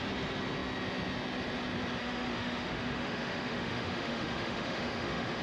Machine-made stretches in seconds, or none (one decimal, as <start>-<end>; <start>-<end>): 2.0-5.4